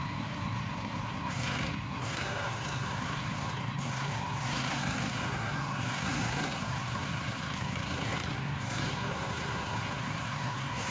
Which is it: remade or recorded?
remade